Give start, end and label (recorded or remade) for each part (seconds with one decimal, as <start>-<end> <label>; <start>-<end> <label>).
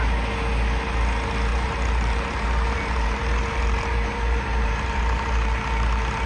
0.0-1.5 recorded; 1.5-5.3 remade; 5.3-6.3 recorded